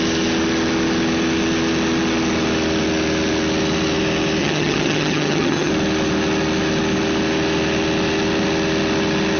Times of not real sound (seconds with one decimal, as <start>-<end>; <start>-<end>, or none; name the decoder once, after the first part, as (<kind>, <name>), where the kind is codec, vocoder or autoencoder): 4.4-5.7 (vocoder, HiFi-GAN)